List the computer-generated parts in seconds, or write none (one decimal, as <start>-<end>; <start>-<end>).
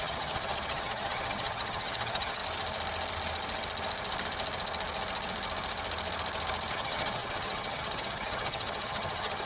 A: 0.0-2.4; 6.7-9.5